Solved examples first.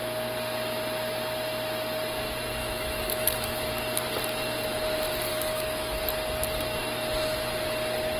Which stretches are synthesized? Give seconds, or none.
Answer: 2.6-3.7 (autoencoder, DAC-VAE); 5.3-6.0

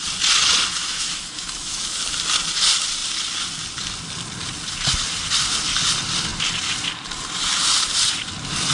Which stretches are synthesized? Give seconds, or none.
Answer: 0.7-1.8 (autoencoder, DAC-VAE)

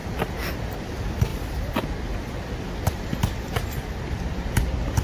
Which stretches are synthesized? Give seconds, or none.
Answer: none

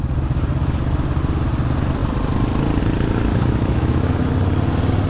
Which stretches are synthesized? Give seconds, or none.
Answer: 3.3-4.0 (autoencoder, DAC-VAE)

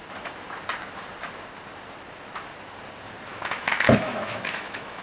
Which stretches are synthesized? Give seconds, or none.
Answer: 3.3-5.0 (autoencoder, DAC-VAE)

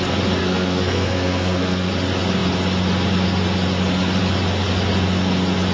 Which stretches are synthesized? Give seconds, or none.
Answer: 0.4-1.9 (codec, SNAC)

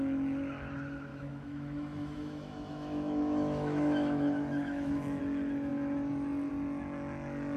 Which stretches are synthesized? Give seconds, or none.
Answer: 1.1-5.2 (autoencoder, DAC-VAE)

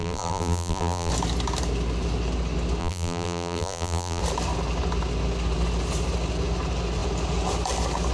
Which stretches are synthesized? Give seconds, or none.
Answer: 0.0-1.1 (vocoder, BigVGAN v2); 2.8-4.2